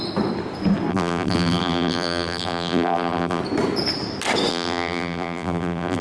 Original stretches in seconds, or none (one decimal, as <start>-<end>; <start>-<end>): 0.0-0.9; 3.4-4.5